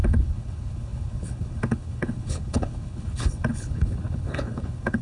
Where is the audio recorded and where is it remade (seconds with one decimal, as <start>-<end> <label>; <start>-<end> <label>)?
0.0-5.0 remade